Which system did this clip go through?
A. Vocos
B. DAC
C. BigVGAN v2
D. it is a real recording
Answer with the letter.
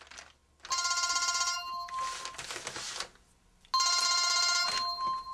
D